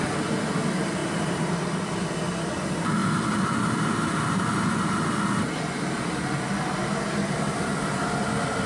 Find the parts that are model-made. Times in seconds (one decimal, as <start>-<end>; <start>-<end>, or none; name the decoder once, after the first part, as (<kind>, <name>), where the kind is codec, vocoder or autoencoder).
1.0-1.6 (vocoder, BigVGAN v2)